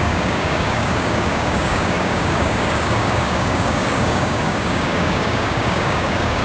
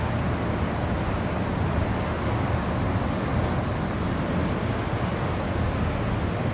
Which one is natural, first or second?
second